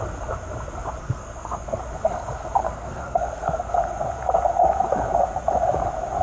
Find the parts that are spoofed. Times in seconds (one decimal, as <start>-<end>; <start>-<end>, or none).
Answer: 1.0-1.8; 2.6-3.7